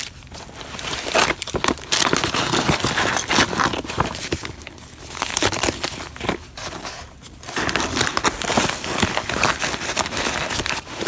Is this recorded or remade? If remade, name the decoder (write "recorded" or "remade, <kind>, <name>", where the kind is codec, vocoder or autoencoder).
recorded